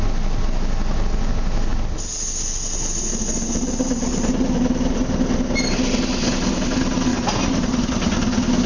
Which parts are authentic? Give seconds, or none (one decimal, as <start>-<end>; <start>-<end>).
0.0-7.1; 7.9-8.7